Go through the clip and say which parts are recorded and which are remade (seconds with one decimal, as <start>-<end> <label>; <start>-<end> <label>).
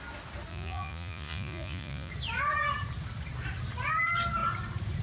0.0-0.5 recorded; 0.5-2.1 remade; 2.1-5.0 recorded